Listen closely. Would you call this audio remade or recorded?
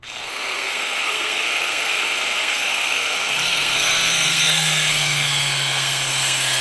remade